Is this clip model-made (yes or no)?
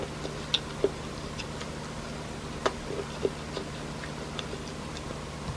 no